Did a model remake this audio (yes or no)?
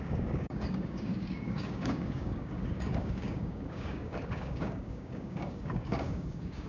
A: yes